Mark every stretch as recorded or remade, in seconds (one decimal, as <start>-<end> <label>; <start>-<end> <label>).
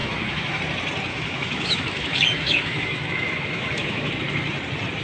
0.0-0.6 remade; 0.6-1.1 recorded; 1.1-4.1 remade; 4.1-5.0 recorded